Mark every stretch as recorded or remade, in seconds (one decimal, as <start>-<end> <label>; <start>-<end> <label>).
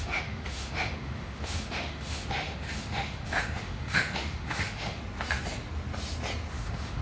0.0-5.0 remade; 5.0-6.5 recorded; 6.5-7.0 remade